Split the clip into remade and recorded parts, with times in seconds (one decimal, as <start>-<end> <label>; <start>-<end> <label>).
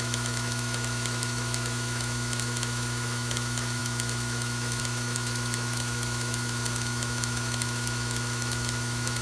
0.0-9.2 remade